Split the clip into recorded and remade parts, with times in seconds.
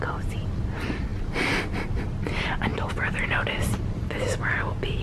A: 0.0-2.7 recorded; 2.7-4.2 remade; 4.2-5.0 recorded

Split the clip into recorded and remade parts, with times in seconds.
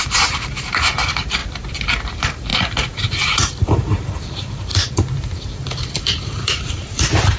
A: 0.0-1.4 remade; 1.4-2.1 recorded; 2.1-2.5 remade; 2.5-3.2 recorded; 3.2-7.4 remade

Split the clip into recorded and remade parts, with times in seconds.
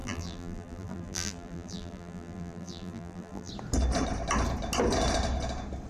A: 0.0-3.5 remade; 3.5-5.9 recorded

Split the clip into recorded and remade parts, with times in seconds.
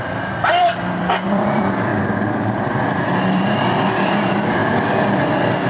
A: 0.0-1.9 remade; 1.9-3.2 recorded; 3.2-4.6 remade; 4.6-5.7 recorded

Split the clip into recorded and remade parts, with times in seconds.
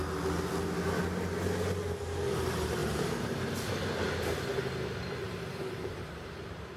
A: 0.0-2.8 recorded; 2.8-3.7 remade; 3.7-5.2 recorded; 5.2-5.9 remade; 5.9-6.8 recorded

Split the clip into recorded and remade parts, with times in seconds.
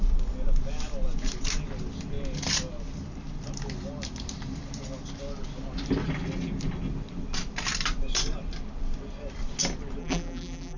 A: 0.0-10.0 recorded; 10.0-10.8 remade